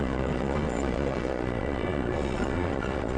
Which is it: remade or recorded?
remade